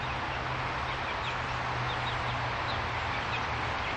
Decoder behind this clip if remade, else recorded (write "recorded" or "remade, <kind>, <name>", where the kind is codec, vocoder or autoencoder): recorded